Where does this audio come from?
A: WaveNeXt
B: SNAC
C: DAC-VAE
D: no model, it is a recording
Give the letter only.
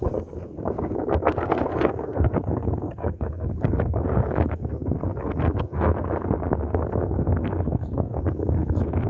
B